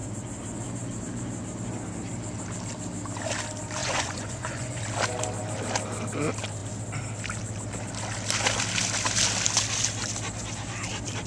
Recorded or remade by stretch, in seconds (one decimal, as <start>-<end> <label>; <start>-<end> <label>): 0.0-3.8 recorded; 3.8-4.8 remade; 4.8-11.3 recorded